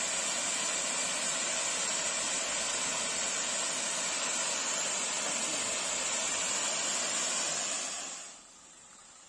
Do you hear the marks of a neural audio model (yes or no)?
no